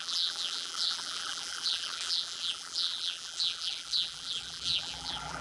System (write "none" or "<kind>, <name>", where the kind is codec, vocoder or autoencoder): vocoder, BigVGAN v2